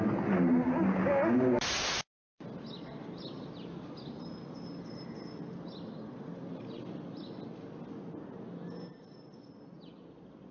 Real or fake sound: real